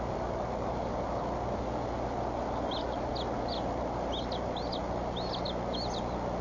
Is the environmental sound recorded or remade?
recorded